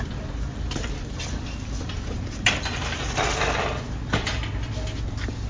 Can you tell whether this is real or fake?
real